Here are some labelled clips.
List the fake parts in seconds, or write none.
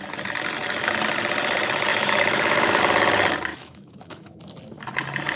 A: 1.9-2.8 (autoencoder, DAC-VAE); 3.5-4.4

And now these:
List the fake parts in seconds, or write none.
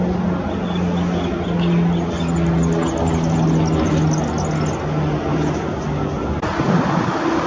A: 5.3-5.8 (vocoder, BigVGAN v2)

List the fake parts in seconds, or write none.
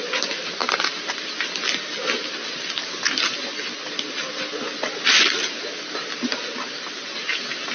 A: none